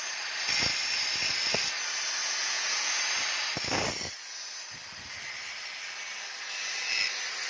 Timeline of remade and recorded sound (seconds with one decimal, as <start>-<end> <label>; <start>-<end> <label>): 0.0-2.2 recorded; 2.2-2.9 remade; 2.9-7.5 recorded